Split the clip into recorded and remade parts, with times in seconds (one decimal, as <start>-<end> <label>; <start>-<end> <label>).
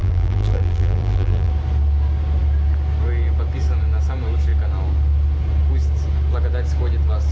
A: 0.0-1.5 remade; 1.5-7.3 recorded